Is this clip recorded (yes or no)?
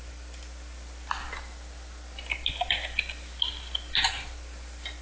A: yes